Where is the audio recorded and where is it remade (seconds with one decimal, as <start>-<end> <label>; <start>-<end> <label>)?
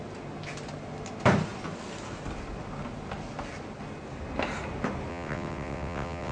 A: 0.0-5.1 recorded; 5.1-6.3 remade